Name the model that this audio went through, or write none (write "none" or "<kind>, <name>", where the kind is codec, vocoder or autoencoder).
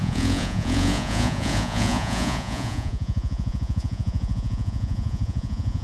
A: vocoder, Vocos